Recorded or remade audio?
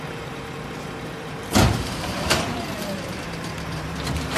remade